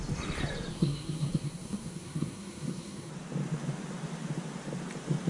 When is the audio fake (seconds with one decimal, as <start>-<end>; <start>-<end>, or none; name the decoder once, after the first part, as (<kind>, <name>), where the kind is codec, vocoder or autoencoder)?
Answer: 0.7-3.1 (codec, SNAC)